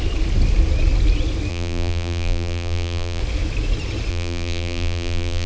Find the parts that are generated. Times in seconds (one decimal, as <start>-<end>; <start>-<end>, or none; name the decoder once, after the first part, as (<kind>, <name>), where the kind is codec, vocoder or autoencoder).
1.5-3.2 (vocoder, BigVGAN v2); 4.1-5.5